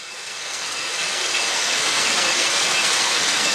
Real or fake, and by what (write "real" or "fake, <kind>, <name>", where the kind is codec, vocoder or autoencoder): fake, codec, SNAC